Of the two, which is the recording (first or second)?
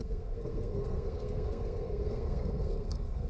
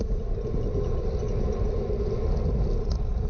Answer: second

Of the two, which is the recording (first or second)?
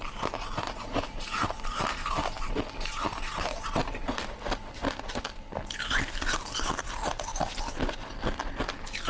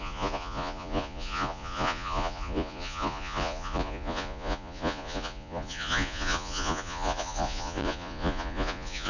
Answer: first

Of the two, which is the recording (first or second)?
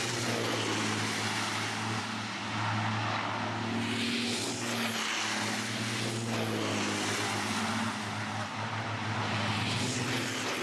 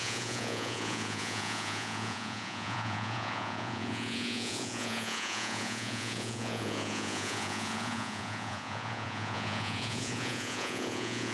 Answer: first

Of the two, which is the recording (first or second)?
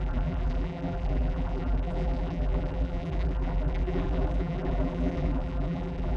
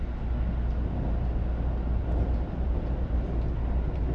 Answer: second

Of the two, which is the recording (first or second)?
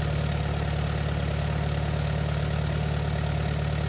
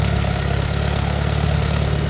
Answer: first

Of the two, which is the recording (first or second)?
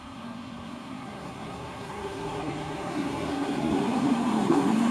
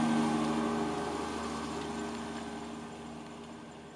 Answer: second